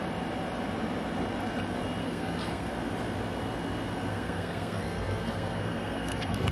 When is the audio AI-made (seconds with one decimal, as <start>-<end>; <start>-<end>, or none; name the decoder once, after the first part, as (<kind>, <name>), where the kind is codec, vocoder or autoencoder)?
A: 2.0-2.7 (codec, SNAC); 4.1-6.5